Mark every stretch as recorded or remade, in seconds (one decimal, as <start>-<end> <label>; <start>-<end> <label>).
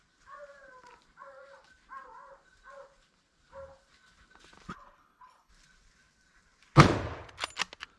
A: 0.0-4.7 recorded; 4.7-5.5 remade; 5.5-8.0 recorded